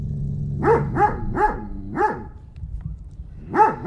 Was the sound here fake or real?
fake